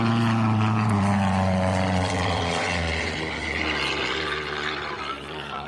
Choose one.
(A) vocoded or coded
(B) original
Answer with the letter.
A